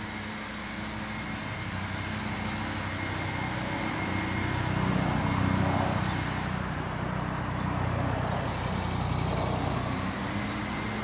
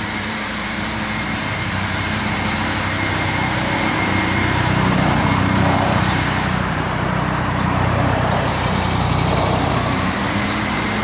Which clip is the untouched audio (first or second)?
first